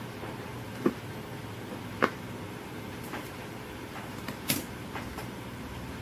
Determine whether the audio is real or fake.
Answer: fake